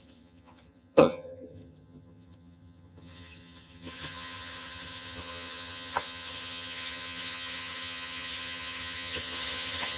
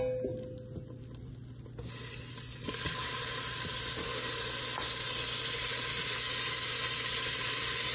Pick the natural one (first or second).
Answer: second